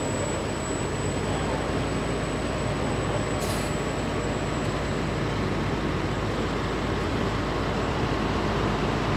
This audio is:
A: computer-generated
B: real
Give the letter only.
B